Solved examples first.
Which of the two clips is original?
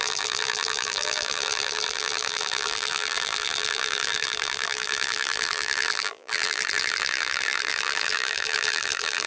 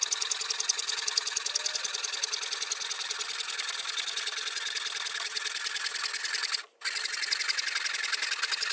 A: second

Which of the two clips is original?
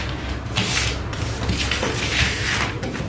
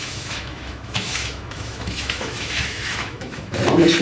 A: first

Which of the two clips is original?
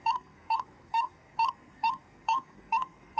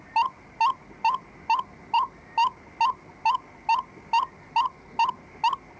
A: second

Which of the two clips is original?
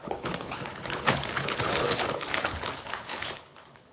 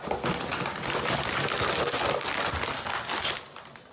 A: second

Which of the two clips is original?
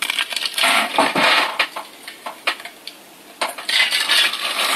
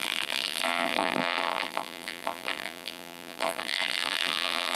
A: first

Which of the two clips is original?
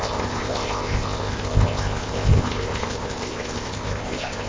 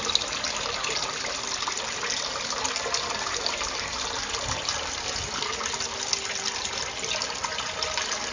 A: second